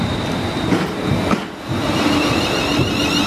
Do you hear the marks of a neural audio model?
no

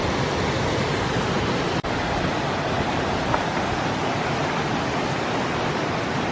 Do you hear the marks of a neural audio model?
no